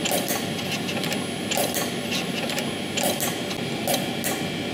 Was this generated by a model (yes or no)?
no